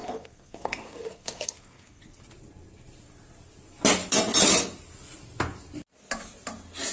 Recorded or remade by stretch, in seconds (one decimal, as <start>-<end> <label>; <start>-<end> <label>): 0.0-2.0 remade; 2.0-6.9 recorded